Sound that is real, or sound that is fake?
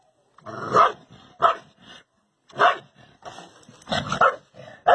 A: real